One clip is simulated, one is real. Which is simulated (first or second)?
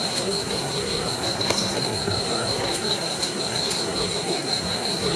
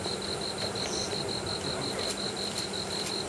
first